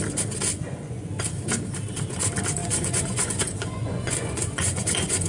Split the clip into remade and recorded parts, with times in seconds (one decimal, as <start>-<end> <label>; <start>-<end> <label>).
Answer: 0.0-0.5 recorded; 0.5-1.1 remade; 1.1-2.6 recorded; 2.6-5.3 remade